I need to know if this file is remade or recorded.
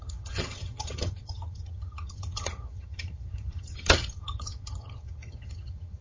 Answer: remade